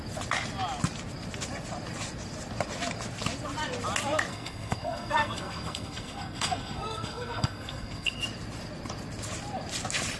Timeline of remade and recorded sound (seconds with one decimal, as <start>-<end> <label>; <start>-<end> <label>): 0.0-4.3 recorded; 4.3-8.2 remade; 8.2-10.2 recorded